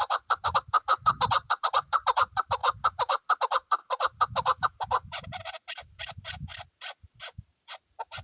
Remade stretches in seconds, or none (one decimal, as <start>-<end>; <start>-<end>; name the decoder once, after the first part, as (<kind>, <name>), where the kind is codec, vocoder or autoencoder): 0.0-6.5 (vocoder, BigVGAN v2); 7.0-8.2